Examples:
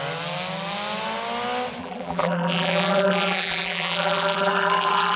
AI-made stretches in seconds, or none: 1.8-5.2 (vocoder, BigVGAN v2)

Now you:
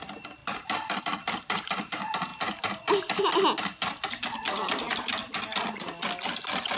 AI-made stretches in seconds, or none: 0.4-1.0 (vocoder, BigVGAN v2)

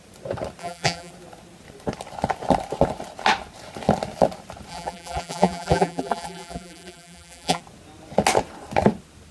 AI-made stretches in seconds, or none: 0.6-1.1 (vocoder, BigVGAN v2); 4.7-7.6

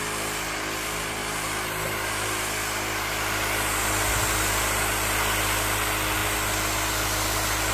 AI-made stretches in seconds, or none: none

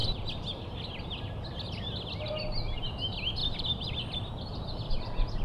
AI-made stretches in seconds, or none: 3.4-4.9 (vocoder, BigVGAN v2)

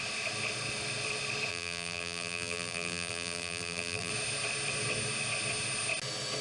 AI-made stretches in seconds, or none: 1.5-4.1 (vocoder, BigVGAN v2)

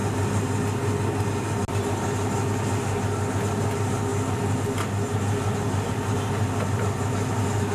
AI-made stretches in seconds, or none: none

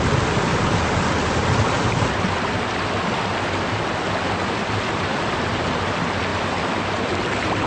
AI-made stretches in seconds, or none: none